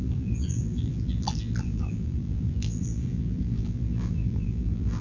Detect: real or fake fake